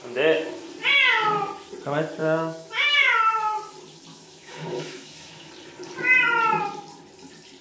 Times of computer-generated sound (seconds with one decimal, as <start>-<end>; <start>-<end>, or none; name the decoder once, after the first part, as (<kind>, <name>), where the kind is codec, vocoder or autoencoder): 2.2-3.1 (autoencoder, DAC-VAE); 4.1-5.5